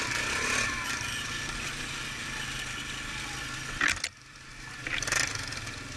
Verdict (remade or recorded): recorded